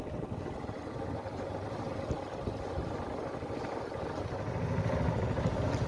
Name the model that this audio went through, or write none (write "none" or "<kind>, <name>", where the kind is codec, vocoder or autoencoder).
none